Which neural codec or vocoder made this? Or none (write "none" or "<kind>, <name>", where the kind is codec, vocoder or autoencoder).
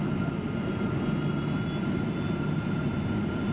none